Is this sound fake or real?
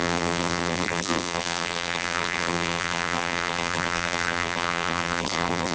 fake